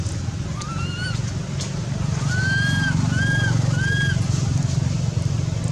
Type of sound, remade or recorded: recorded